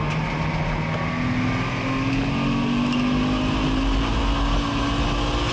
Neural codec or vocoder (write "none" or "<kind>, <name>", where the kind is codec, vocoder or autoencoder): none